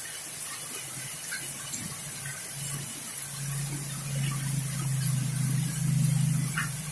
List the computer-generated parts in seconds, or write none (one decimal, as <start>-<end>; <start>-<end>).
none